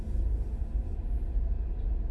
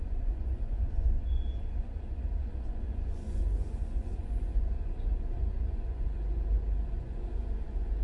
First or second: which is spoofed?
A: second